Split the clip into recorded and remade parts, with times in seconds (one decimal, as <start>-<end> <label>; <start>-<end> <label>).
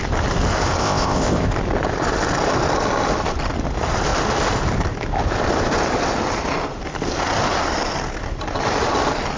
0.0-0.8 recorded; 0.8-1.5 remade; 1.5-9.4 recorded